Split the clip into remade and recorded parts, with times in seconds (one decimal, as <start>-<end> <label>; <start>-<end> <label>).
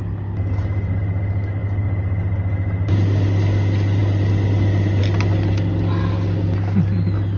0.0-7.4 recorded